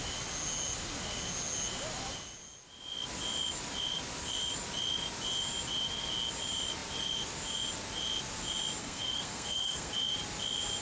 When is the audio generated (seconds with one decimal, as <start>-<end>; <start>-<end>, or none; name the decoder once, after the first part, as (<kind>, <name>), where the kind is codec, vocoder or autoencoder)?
8.8-9.9 (codec, SNAC)